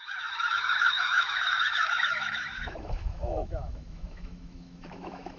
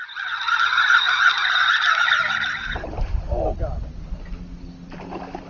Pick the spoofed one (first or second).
first